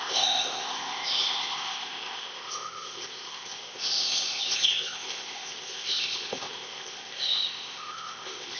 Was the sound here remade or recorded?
remade